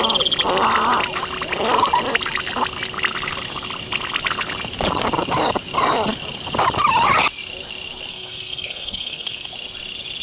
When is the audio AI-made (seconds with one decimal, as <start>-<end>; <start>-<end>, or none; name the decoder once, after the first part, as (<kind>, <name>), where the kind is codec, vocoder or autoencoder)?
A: 8.1-9.5 (codec, SNAC)